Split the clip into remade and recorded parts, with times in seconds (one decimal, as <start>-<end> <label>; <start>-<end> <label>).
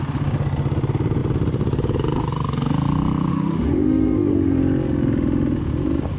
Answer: 0.0-3.3 recorded; 3.3-4.6 remade; 4.6-6.2 recorded